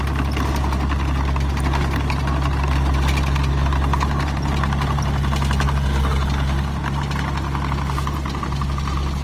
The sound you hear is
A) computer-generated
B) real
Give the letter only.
B